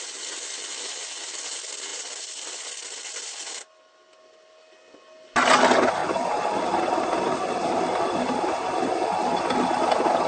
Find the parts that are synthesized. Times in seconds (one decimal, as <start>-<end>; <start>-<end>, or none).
none